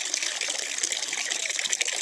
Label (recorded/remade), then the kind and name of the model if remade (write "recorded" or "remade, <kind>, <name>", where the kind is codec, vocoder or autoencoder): recorded